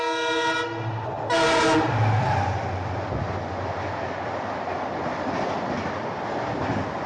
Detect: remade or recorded recorded